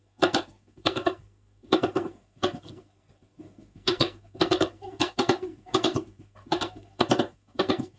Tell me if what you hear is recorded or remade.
remade